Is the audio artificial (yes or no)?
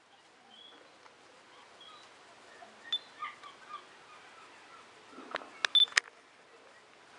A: no